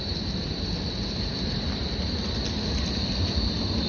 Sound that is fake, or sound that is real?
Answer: real